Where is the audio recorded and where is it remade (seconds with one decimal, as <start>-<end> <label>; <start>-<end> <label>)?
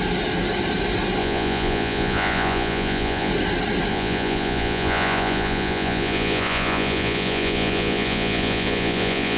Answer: 0.0-1.2 recorded; 1.2-3.3 remade; 3.3-3.9 recorded; 3.9-9.4 remade